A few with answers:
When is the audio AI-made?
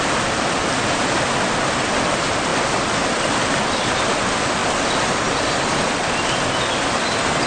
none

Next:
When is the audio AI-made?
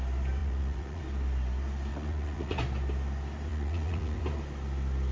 0.4-1.0 (vocoder, Vocos); 1.9-2.6; 3.5-4.2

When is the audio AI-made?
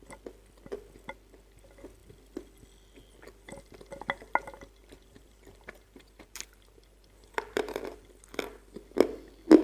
4.8-8.0 (vocoder, BigVGAN v2)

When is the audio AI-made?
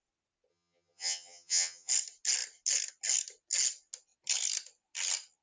0.5-1.9 (vocoder, HiFi-GAN)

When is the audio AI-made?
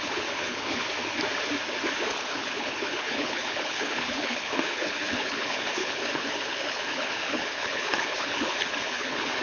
0.0-0.8 (codec, HILCodec); 2.0-9.4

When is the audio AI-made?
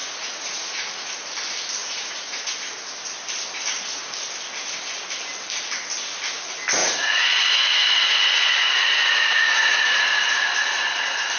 0.0-1.1 (vocoder, Vocos); 1.8-2.5; 6.8-10.0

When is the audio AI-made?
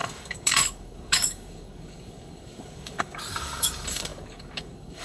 0.0-5.0 (codec, DAC)